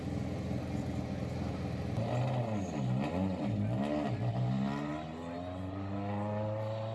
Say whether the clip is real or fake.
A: real